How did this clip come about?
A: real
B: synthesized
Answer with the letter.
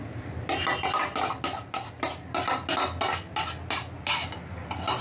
A